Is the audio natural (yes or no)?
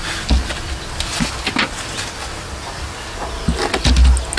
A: yes